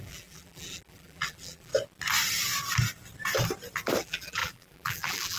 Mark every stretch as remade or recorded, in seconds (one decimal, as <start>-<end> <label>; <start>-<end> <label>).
0.0-1.7 remade; 1.7-4.0 recorded; 4.0-5.4 remade